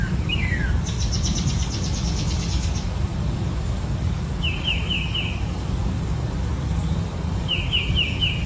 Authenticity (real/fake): fake